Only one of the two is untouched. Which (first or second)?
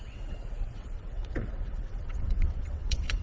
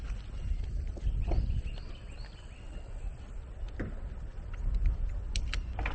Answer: second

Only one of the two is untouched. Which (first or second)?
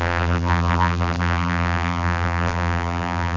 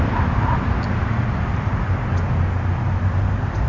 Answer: second